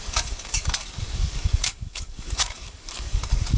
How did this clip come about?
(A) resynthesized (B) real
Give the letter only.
A